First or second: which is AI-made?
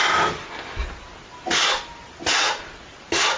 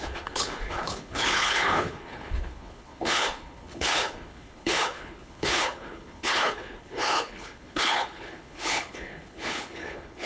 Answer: second